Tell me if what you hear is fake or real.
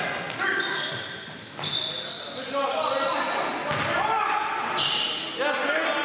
real